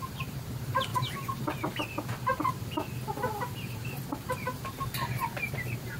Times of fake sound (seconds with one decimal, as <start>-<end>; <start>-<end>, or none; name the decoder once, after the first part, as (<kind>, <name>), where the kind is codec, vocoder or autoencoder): 0.0-0.9 (vocoder, BigVGAN v2); 4.1-6.0